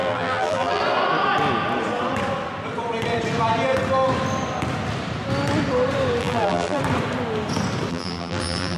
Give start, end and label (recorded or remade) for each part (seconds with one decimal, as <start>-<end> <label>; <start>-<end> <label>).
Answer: 0.0-0.8 remade; 0.8-6.2 recorded; 6.2-6.8 remade; 6.8-7.9 recorded; 7.9-8.8 remade